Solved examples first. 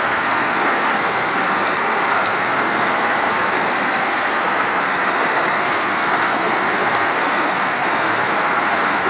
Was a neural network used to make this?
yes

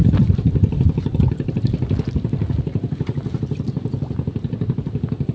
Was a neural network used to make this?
yes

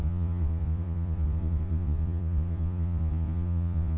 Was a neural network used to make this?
yes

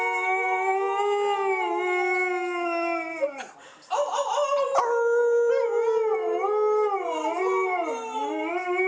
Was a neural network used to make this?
no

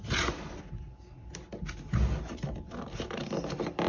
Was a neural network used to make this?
no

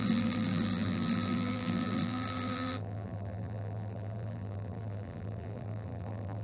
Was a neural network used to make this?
yes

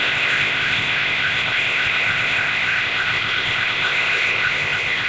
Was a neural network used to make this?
yes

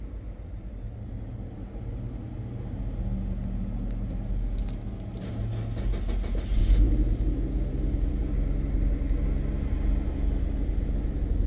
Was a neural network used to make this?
no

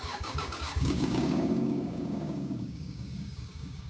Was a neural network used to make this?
yes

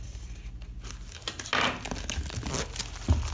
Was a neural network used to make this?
no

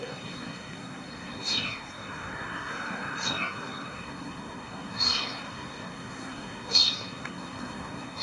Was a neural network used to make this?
yes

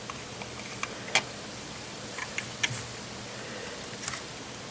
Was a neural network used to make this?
no